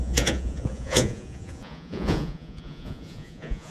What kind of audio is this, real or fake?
fake